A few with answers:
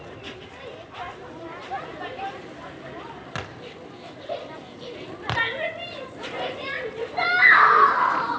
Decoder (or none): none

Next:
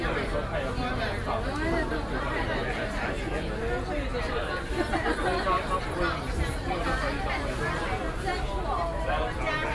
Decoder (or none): none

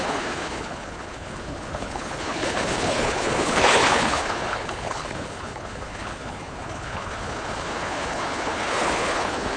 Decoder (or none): codec, HILCodec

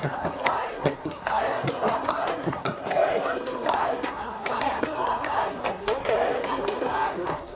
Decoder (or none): codec, SNAC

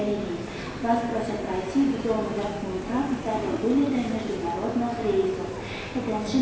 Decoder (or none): none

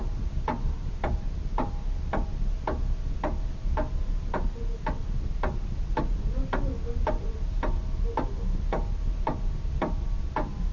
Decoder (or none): none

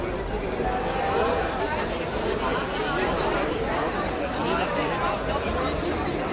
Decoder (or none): none